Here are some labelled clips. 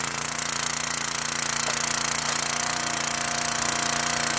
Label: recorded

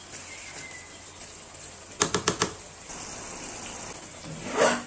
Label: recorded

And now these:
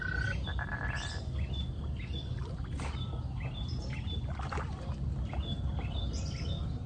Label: recorded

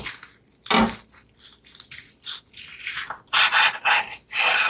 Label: recorded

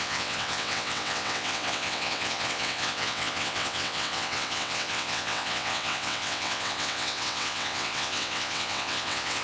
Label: remade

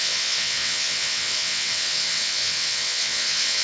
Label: remade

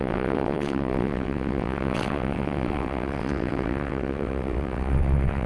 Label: remade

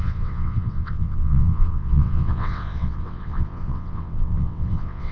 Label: remade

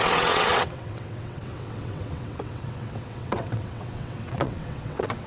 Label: remade